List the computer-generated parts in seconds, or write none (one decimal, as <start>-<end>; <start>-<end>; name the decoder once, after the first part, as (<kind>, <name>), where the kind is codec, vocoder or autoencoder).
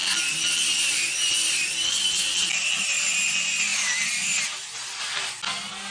none